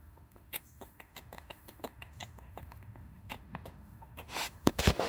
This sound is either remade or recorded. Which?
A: remade